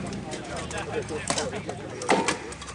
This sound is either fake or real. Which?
fake